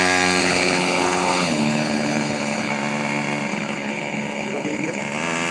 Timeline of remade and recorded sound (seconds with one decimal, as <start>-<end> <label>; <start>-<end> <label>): 0.0-0.4 recorded; 0.4-2.7 remade; 2.7-3.5 recorded; 3.5-5.0 remade; 5.0-5.5 recorded